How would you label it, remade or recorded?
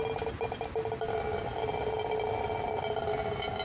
recorded